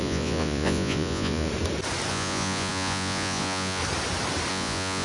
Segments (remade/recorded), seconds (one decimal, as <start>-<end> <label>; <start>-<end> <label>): 0.0-1.5 remade; 1.5-2.1 recorded; 2.1-3.8 remade; 3.8-4.5 recorded; 4.5-5.0 remade